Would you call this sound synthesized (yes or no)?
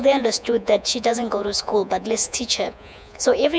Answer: yes